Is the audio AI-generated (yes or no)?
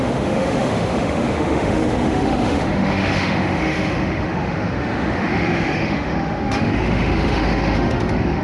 yes